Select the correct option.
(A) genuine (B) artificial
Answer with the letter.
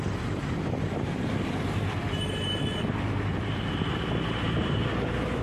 B